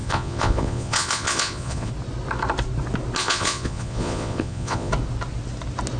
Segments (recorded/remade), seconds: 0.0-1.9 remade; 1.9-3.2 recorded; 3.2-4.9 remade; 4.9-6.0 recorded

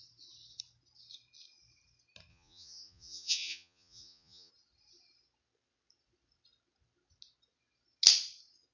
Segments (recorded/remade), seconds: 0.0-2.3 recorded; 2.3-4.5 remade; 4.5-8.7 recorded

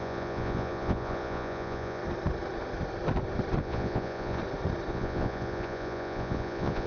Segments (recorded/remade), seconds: 0.0-2.0 remade; 2.0-3.6 recorded; 3.6-4.4 remade; 4.4-4.9 recorded; 4.9-6.9 remade

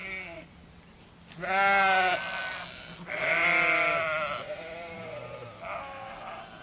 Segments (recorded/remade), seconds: 0.0-0.5 remade; 0.5-6.6 recorded

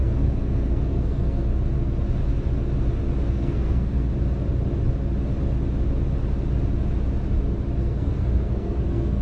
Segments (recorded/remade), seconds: 0.0-1.5 remade; 1.5-3.3 recorded; 3.3-4.1 remade; 4.1-7.8 recorded; 7.8-9.2 remade